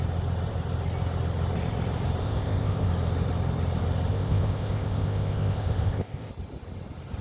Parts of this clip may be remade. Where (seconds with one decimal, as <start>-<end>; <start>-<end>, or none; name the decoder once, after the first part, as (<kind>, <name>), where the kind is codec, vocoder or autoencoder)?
2.2-2.9 (codec, ZipCodec); 4.1-6.3